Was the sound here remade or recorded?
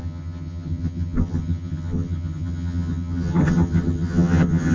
remade